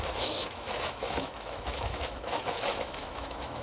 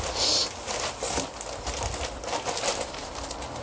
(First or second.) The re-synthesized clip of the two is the first